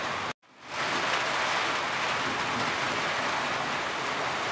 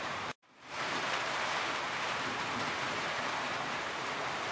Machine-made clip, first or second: second